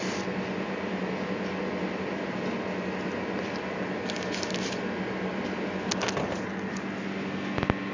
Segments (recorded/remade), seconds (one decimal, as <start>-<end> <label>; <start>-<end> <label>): 0.0-7.9 recorded